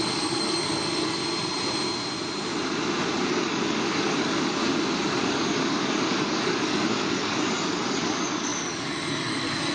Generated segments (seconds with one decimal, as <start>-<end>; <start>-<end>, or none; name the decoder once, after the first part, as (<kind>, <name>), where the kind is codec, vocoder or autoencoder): 0.0-1.2 (codec, DAC); 3.3-4.6; 5.2-9.7